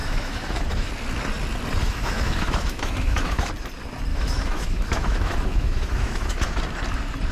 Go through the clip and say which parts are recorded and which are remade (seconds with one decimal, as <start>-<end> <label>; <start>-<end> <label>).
0.0-0.9 remade; 0.9-1.8 recorded; 1.8-3.5 remade; 3.5-4.1 recorded; 4.1-6.6 remade; 6.6-7.3 recorded